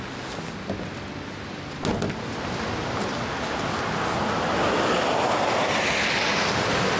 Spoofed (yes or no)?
no